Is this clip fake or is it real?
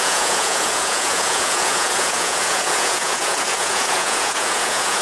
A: fake